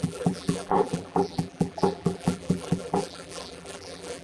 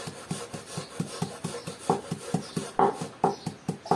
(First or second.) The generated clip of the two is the first